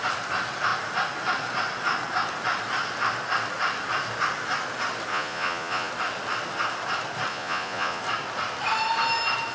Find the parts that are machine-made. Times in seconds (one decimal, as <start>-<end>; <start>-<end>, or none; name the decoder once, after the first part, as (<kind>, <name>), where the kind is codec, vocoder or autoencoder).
5.1-5.9 (vocoder, Vocos); 7.3-8.0